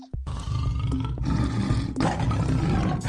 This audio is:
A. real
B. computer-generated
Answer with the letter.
A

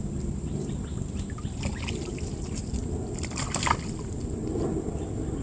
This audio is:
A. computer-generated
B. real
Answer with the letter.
B